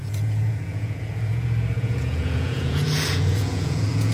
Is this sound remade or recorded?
remade